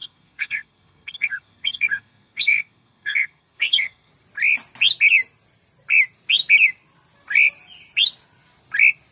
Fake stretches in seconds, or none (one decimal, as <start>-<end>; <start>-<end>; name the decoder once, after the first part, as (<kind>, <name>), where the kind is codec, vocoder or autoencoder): 0.0-4.1 (codec, SNAC)